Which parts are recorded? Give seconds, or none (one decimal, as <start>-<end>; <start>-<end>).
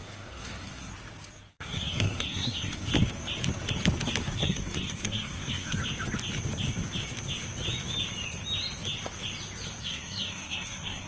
0.9-1.5; 2.9-4.2; 5.8-9.8